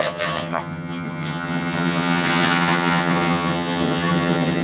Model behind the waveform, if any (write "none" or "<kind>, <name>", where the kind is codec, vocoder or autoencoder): vocoder, HiFi-GAN